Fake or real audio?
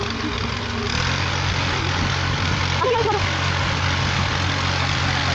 real